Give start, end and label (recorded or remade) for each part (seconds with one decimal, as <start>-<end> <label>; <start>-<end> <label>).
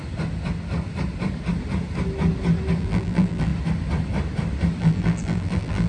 0.0-2.8 recorded; 2.8-3.5 remade; 3.5-4.8 recorded; 4.8-5.9 remade